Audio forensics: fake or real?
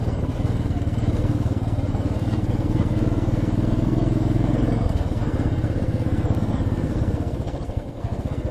fake